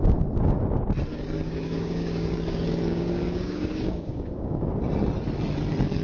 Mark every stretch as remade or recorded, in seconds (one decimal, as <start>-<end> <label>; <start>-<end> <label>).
0.0-1.1 recorded; 1.1-4.7 remade; 4.7-6.0 recorded